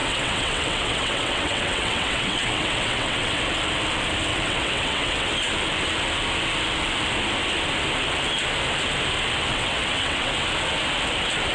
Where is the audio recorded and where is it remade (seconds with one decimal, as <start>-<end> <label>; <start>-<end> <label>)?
0.0-3.4 remade; 3.4-4.3 recorded; 4.3-5.3 remade; 5.3-9.5 recorded; 9.5-10.3 remade; 10.3-11.5 recorded